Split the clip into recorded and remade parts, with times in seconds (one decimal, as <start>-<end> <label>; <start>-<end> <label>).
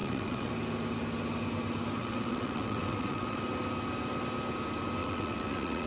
0.0-0.5 remade; 0.5-2.0 recorded; 2.0-3.4 remade; 3.4-5.0 recorded; 5.0-5.9 remade